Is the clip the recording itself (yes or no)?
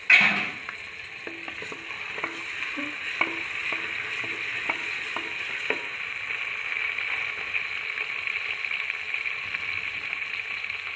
yes